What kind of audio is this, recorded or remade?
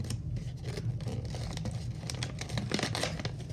recorded